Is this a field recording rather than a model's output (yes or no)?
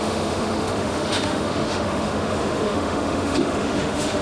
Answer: no